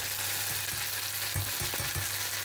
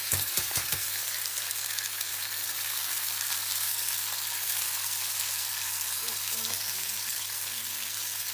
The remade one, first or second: second